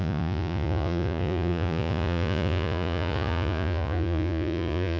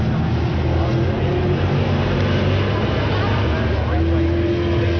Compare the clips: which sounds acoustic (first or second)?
second